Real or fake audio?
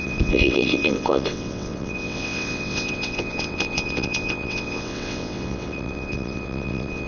fake